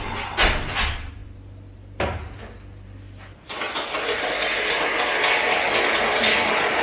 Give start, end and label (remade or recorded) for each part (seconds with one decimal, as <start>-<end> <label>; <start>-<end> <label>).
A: 0.0-6.8 recorded